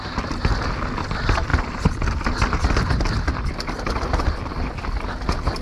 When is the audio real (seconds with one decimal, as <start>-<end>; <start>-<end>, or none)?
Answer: 0.0-5.6